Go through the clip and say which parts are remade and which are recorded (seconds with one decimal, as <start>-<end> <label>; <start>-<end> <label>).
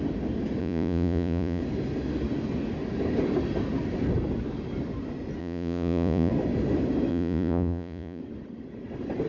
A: 0.0-0.6 recorded; 0.6-1.6 remade; 1.6-5.4 recorded; 5.4-6.3 remade; 6.3-7.1 recorded; 7.1-8.2 remade; 8.2-9.3 recorded